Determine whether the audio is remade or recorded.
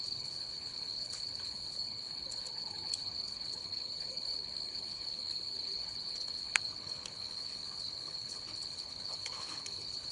remade